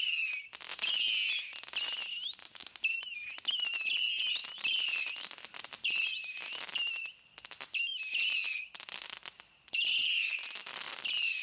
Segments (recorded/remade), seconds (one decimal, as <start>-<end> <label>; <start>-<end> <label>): 0.0-0.7 recorded; 0.7-1.3 remade; 1.3-11.4 recorded